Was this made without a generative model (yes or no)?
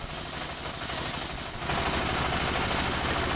yes